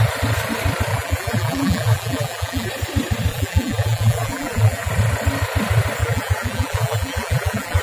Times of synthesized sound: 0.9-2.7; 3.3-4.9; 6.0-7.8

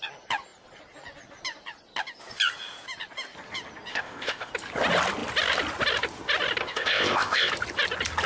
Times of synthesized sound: 3.9-4.5; 6.6-7.5

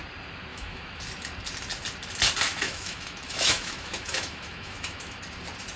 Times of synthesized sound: 0.5-1.0; 2.5-5.2

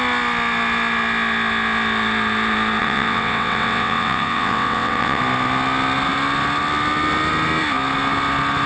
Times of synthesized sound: 2.8-5.2

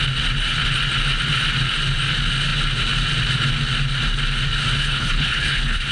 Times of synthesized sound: 4.8-5.9

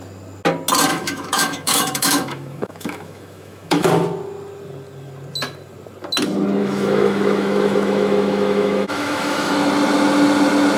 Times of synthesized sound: 0.9-3.9; 6.6-9.5